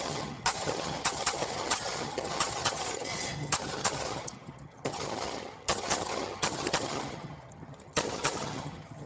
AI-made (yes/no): yes